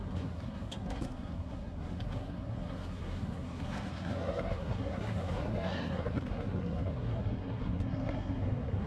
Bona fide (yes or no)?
no